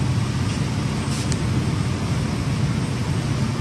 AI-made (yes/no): no